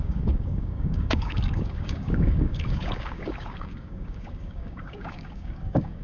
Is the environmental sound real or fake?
fake